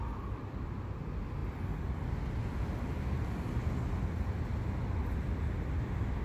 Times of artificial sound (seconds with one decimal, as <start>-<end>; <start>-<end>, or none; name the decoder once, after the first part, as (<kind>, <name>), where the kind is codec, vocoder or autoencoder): none